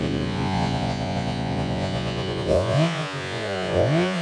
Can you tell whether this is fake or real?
fake